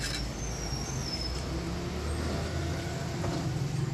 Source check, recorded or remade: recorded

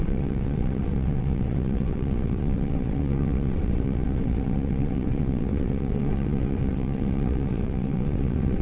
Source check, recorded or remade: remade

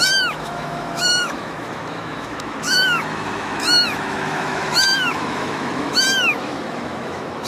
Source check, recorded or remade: remade